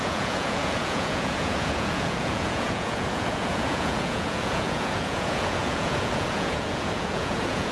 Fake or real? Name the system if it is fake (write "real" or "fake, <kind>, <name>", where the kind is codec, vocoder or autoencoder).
fake, vocoder, Vocos